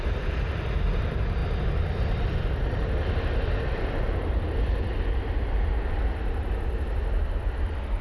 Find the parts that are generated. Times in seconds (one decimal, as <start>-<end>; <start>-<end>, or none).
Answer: none